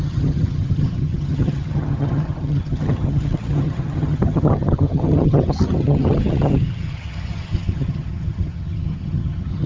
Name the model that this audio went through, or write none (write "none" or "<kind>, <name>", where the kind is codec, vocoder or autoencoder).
vocoder, HiFi-GAN